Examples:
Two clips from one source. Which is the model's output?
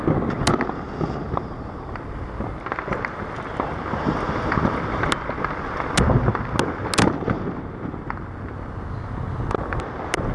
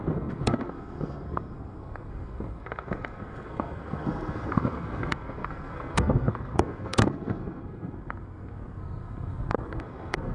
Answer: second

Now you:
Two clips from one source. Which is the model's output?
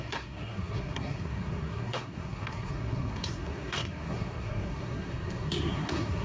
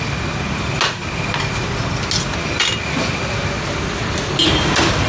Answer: first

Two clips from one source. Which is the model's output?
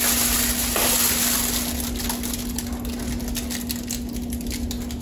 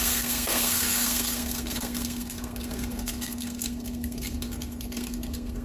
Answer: second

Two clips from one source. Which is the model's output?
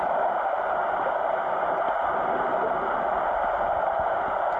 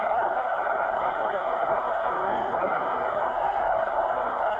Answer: second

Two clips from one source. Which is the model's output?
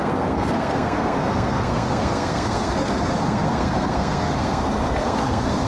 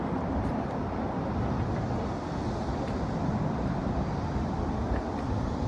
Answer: first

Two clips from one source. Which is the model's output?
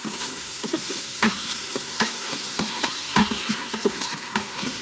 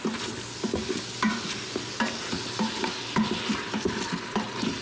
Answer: first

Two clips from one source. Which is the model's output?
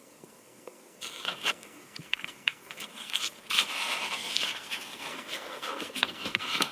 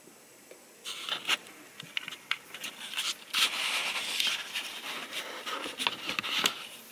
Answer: first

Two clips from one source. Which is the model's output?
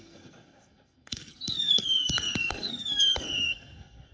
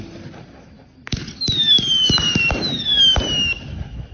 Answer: first